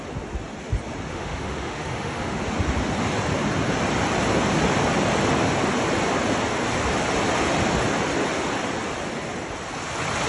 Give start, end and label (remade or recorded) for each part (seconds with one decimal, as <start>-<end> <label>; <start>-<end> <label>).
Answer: 0.0-1.1 recorded; 1.1-2.4 remade; 2.4-10.3 recorded